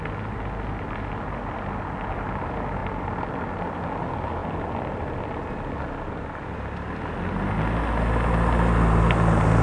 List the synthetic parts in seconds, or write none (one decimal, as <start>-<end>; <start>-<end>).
none